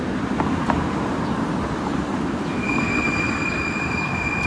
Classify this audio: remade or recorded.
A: remade